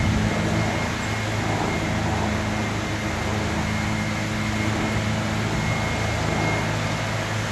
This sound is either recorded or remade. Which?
recorded